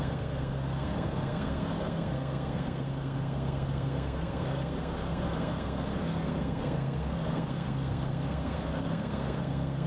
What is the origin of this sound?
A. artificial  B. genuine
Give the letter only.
A